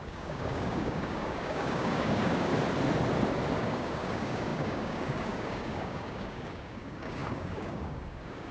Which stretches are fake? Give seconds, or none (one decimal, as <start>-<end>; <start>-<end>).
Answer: 0.0-2.5; 3.6-8.5

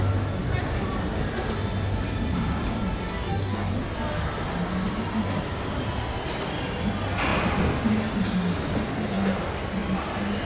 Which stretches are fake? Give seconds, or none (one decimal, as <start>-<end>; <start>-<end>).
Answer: 3.1-3.7

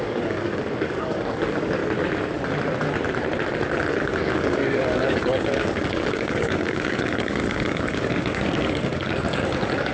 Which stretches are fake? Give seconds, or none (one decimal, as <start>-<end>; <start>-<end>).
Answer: 0.0-1.8; 3.9-9.9

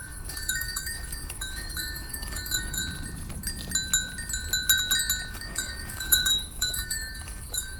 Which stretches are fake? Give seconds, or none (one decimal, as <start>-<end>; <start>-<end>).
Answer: 0.0-2.8; 5.3-7.8

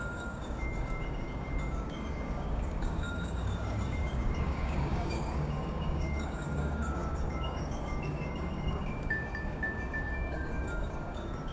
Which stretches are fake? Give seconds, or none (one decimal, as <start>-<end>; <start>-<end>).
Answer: 0.0-11.5

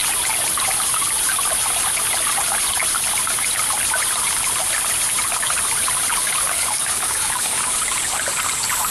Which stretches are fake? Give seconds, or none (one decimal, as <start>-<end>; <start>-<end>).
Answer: 6.2-7.8

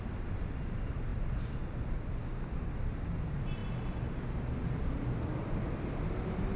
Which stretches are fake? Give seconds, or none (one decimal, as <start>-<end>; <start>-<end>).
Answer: 2.2-2.7

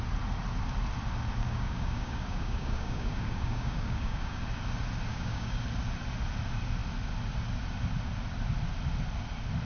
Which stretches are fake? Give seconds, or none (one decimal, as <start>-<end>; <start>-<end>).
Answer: 1.4-4.4; 5.1-5.6